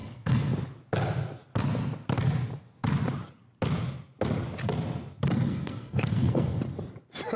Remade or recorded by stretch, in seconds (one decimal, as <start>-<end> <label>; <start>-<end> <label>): 0.0-0.6 remade; 0.6-5.3 recorded; 5.3-6.6 remade; 6.6-7.4 recorded